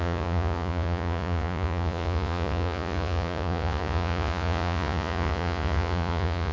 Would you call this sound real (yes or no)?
no